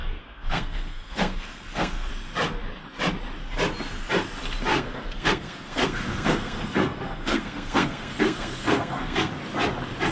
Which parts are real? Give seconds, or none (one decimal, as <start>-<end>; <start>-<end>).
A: 2.1-4.7; 9.3-10.1

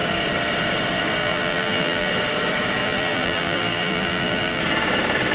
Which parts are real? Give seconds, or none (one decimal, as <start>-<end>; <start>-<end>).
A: 0.0-1.2; 2.1-2.8; 4.6-5.3

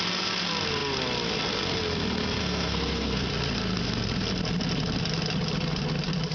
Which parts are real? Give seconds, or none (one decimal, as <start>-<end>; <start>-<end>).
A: 0.0-2.4; 3.3-6.3

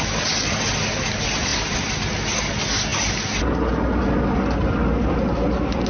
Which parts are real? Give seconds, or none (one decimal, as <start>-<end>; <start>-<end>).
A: 0.0-1.5; 2.1-2.9; 3.4-5.9

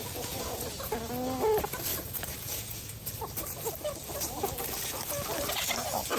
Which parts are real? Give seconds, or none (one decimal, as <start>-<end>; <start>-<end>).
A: 0.6-1.9; 3.1-6.2

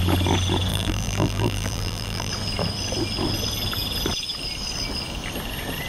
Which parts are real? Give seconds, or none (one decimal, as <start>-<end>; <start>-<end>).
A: 0.0-0.7; 2.3-5.9